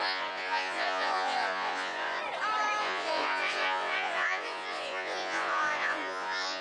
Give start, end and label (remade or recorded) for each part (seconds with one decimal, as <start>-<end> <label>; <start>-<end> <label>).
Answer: 0.0-2.2 remade; 2.2-2.8 recorded; 2.8-6.6 remade